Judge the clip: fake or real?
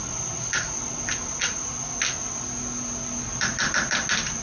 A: real